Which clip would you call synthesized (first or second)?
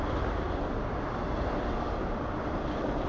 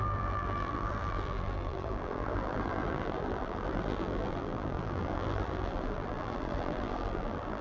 second